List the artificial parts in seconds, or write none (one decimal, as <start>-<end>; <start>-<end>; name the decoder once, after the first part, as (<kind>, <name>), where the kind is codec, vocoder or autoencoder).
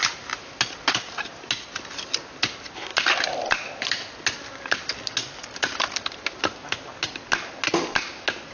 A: none